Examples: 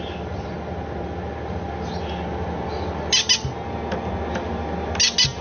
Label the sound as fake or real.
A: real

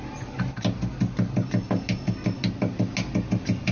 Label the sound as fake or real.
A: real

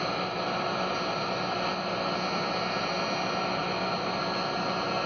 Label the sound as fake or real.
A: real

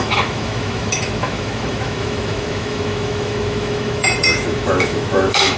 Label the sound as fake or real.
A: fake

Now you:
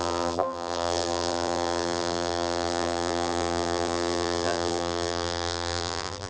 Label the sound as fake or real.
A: fake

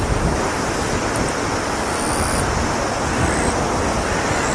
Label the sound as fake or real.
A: real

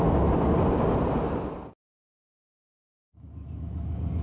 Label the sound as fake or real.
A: real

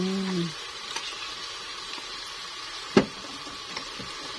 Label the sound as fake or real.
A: real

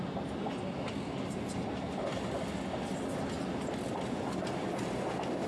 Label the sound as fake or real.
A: real